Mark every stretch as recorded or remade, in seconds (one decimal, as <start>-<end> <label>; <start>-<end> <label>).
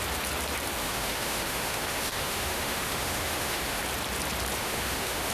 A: 0.0-0.8 recorded; 0.8-3.8 remade; 3.8-4.6 recorded; 4.6-5.3 remade